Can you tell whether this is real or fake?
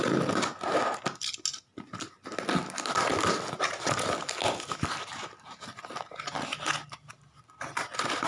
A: real